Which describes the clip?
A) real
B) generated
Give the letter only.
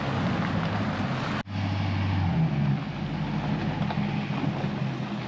A